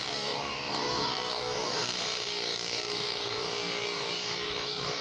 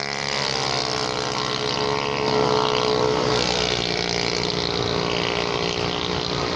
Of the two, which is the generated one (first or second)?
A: first